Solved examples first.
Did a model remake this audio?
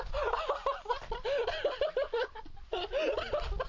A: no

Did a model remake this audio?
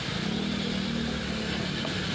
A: no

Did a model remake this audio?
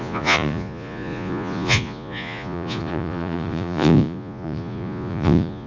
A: yes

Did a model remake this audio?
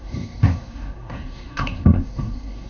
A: yes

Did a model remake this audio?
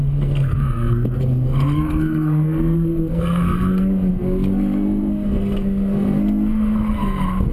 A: yes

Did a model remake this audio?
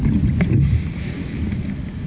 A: no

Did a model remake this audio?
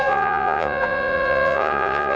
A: yes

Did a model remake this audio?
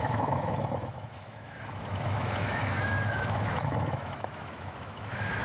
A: yes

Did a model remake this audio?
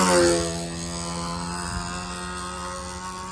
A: no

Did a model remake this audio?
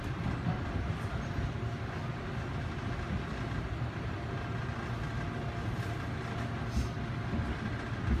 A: no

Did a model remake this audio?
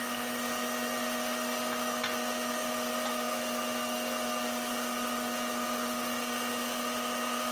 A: no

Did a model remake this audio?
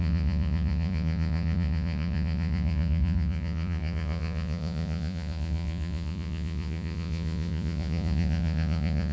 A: yes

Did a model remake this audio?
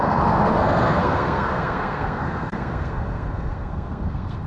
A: yes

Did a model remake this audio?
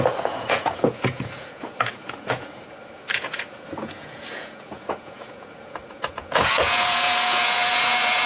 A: yes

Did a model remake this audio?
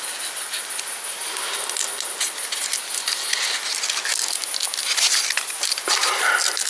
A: no